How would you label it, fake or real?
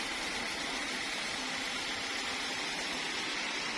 real